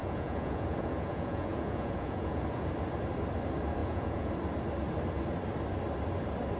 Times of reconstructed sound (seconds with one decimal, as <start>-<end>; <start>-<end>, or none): 0.0-2.7; 3.8-4.3